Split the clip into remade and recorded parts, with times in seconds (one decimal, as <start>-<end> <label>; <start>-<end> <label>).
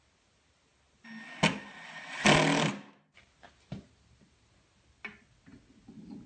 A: 0.0-6.3 recorded